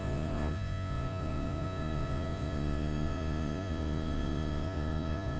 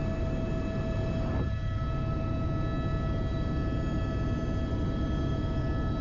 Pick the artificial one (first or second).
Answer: first